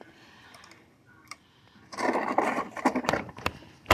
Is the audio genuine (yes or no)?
no